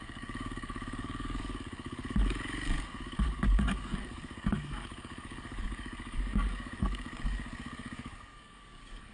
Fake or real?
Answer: fake